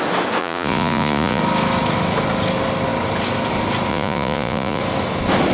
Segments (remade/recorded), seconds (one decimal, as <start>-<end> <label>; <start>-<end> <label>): 0.0-0.4 recorded; 0.4-1.4 remade; 1.4-3.9 recorded; 3.9-4.8 remade; 4.8-5.5 recorded